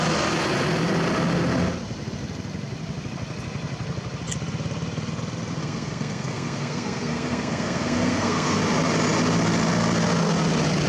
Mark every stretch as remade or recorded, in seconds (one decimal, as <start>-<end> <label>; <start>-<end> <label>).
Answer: 0.0-5.6 recorded; 5.6-8.6 remade; 8.6-10.9 recorded

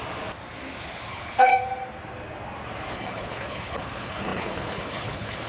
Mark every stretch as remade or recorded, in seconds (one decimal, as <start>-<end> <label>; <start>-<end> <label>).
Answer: 0.0-1.1 recorded; 1.1-1.5 remade; 1.5-2.9 recorded; 2.9-5.5 remade

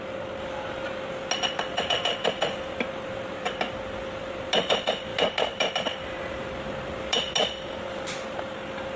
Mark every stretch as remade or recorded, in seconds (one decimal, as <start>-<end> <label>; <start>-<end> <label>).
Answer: 0.0-9.0 recorded

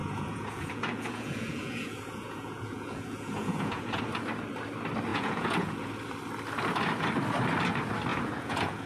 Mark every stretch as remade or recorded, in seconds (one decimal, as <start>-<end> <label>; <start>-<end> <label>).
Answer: 0.0-4.0 remade; 4.0-5.1 recorded; 5.1-5.9 remade; 5.9-8.1 recorded; 8.1-8.9 remade

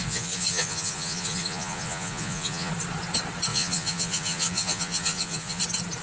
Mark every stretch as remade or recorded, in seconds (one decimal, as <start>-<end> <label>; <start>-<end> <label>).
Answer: 0.0-2.7 remade; 2.7-3.5 recorded; 3.5-5.6 remade; 5.6-6.0 recorded